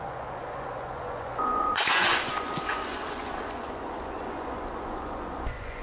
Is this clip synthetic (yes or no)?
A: yes